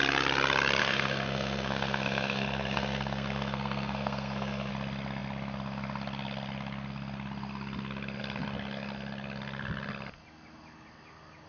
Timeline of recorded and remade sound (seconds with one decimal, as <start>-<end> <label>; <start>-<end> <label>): 0.0-0.8 recorded; 0.8-4.7 remade; 4.7-11.5 recorded